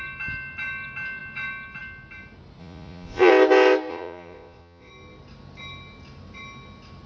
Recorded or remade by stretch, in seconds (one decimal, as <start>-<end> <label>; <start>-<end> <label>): 0.0-2.6 recorded; 2.6-3.3 remade; 3.3-3.9 recorded; 3.9-4.9 remade; 4.9-7.1 recorded